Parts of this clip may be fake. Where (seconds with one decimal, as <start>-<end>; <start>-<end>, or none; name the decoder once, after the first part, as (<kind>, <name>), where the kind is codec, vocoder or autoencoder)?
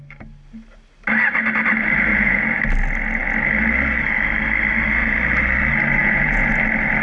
2.1-2.6 (vocoder, Vocos); 6.0-6.5